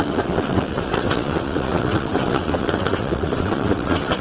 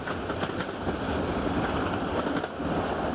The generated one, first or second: first